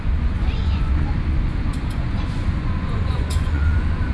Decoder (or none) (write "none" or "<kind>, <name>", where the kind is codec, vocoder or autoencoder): vocoder, Vocos